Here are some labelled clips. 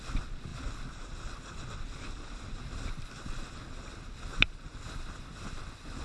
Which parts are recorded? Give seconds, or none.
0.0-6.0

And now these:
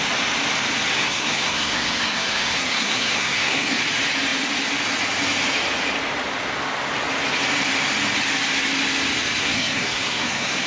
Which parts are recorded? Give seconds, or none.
0.0-0.9; 3.8-9.4

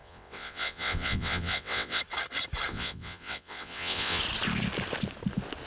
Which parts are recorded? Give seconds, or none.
2.0-2.7; 4.2-5.7

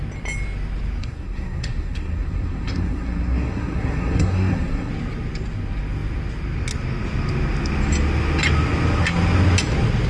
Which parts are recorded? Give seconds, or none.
0.0-1.0; 4.9-10.1

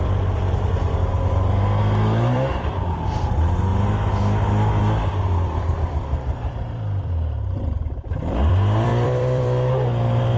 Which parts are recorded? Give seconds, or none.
3.7-4.7

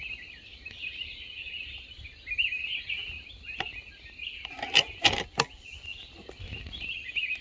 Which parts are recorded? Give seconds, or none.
0.0-7.4

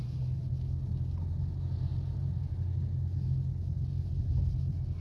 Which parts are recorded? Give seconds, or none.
0.0-5.0

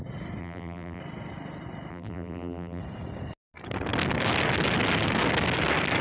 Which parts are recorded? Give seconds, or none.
0.0-0.4; 1.0-1.9; 2.8-6.0